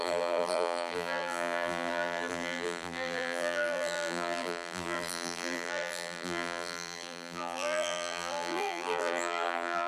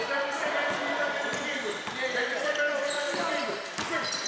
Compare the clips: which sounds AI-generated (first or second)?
first